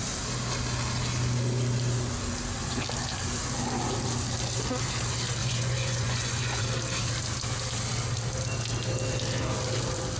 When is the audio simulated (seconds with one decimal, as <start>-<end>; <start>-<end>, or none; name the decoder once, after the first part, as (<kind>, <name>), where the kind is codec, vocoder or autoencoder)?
5.4-6.6 (vocoder, Vocos)